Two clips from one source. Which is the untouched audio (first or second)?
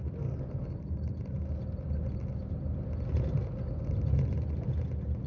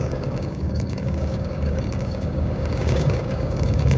first